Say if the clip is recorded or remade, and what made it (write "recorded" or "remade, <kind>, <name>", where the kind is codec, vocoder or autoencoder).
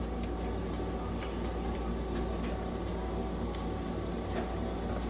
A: recorded